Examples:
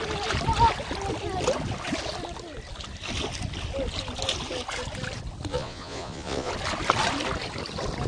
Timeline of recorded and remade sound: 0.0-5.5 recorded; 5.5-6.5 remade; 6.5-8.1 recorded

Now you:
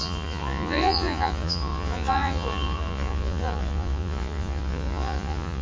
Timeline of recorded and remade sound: 0.0-5.6 remade

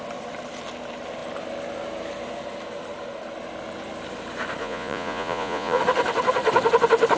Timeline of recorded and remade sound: 0.0-4.6 recorded; 4.6-5.8 remade; 5.8-7.2 recorded